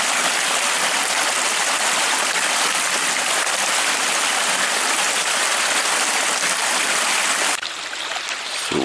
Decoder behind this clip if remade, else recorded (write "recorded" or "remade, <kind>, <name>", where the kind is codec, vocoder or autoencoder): recorded